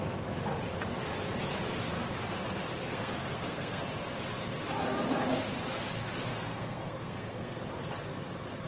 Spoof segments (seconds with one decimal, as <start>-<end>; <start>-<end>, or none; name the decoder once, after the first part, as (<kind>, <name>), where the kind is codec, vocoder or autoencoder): 2.9-3.8 (codec, SNAC); 6.3-7.6